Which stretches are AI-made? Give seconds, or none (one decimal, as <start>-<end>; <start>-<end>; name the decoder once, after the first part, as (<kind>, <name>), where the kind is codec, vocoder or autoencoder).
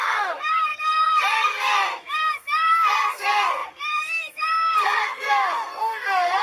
0.0-6.4 (codec, SNAC)